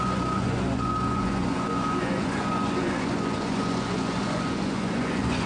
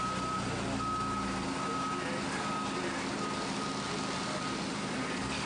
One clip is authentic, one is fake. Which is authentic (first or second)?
second